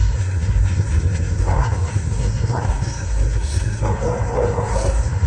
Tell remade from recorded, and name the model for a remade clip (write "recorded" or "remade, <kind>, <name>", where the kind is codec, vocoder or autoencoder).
remade, codec, SNAC